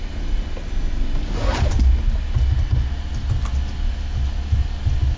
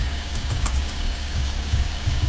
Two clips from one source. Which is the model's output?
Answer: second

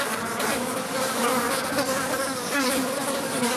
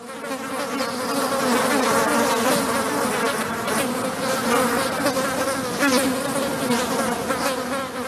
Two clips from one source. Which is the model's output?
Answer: first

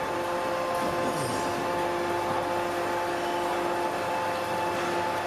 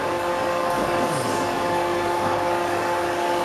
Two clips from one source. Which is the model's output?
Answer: second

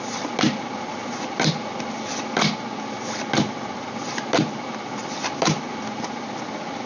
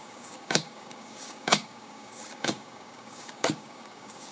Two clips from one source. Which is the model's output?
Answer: second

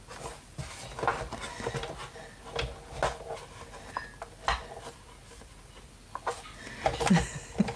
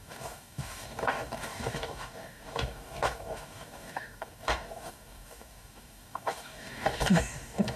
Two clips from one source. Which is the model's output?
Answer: second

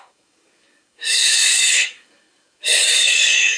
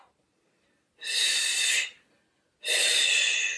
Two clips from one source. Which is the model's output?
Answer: first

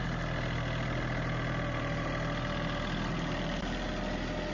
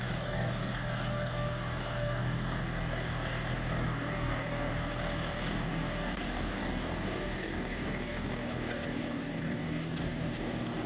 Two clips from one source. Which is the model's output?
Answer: second